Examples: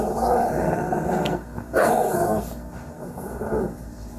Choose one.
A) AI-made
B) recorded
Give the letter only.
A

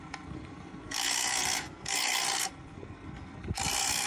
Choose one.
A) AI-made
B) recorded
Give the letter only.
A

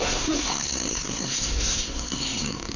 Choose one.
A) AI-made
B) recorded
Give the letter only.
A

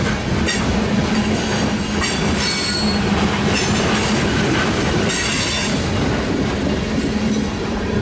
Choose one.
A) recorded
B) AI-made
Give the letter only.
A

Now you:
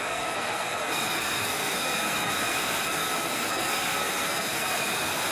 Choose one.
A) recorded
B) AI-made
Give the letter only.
B